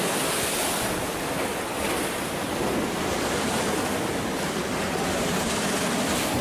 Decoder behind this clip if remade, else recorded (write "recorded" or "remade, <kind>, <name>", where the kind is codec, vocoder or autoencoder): recorded